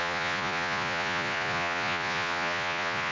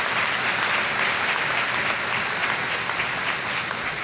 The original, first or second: second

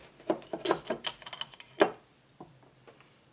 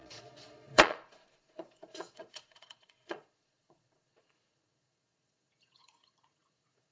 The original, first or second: first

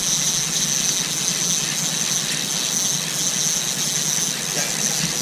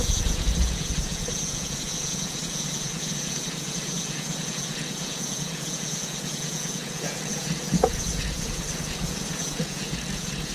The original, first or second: first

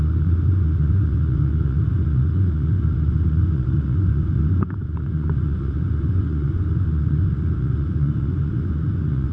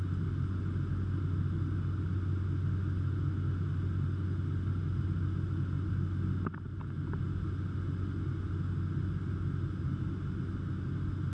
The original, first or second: second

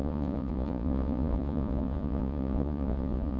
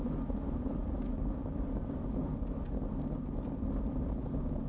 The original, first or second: second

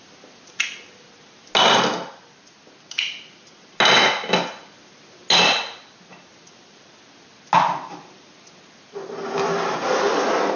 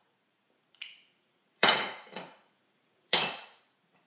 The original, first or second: first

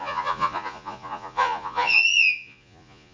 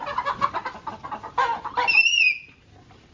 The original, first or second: second